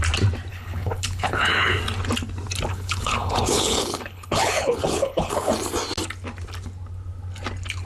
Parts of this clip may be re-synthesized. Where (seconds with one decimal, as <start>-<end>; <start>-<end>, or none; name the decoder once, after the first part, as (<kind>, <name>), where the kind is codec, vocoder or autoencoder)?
0.5-1.8 (codec, HILCodec); 2.7-5.5